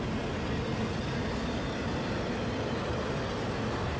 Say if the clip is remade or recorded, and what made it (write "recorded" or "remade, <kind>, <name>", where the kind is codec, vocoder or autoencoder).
recorded